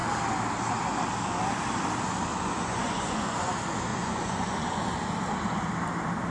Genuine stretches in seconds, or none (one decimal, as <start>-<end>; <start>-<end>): 0.0-2.3; 3.5-3.9; 4.8-6.3